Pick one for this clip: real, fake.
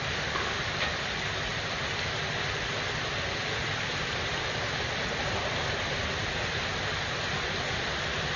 real